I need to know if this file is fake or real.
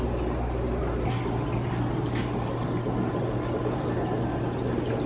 real